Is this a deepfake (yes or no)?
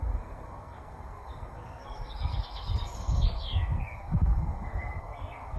yes